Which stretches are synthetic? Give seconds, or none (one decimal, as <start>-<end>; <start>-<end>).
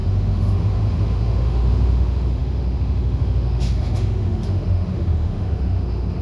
0.0-6.2